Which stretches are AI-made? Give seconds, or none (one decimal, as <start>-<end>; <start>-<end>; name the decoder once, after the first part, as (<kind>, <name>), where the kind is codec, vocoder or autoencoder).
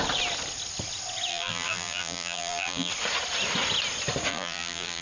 1.3-2.9 (vocoder, BigVGAN v2); 4.3-5.0